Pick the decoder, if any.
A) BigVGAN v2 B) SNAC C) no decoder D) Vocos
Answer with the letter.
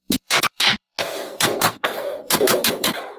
B